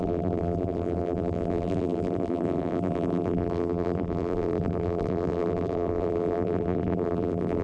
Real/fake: fake